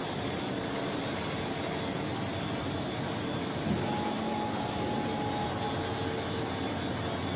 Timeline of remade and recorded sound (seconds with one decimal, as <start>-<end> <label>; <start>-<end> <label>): 0.0-7.4 recorded